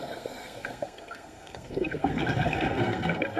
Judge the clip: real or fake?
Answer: fake